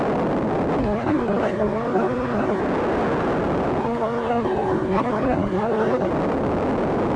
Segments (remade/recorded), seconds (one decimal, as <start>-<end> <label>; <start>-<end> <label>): 0.0-0.8 recorded; 0.8-2.6 remade; 2.6-3.8 recorded; 3.8-6.1 remade; 6.1-7.2 recorded